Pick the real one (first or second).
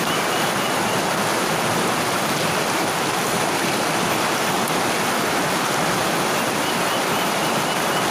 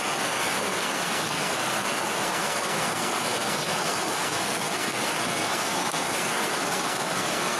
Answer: first